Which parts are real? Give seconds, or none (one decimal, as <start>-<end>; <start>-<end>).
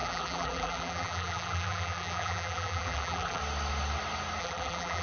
3.4-4.4